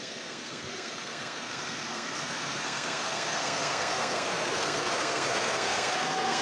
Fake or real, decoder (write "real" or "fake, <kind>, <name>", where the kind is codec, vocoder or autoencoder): fake, codec, SNAC